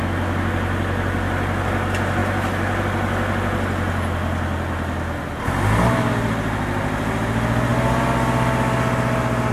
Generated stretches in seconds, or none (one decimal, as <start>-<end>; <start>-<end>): none